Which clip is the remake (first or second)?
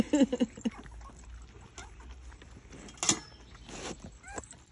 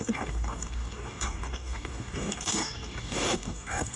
second